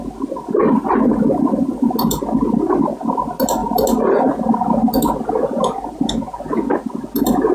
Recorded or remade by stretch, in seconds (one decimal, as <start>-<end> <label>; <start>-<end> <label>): 0.0-0.6 recorded; 0.6-1.9 remade; 1.9-7.5 recorded